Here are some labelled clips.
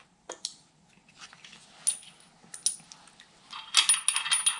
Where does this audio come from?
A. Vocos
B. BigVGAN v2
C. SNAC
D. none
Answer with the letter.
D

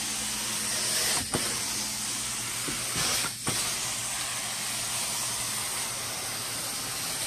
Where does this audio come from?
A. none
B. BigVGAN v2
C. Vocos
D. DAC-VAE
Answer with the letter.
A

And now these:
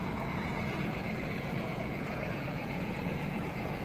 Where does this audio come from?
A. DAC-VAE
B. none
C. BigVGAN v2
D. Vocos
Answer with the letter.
D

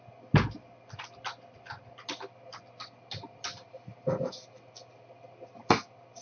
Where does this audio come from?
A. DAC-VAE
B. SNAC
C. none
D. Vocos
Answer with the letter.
C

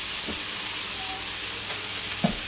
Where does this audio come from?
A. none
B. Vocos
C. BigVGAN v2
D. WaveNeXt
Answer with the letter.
A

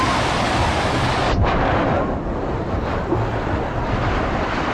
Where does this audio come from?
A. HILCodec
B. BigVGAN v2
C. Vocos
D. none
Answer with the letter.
D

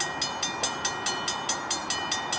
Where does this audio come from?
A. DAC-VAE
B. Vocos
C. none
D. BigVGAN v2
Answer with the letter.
C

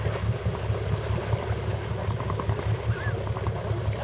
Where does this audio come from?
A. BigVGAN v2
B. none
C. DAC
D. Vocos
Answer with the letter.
B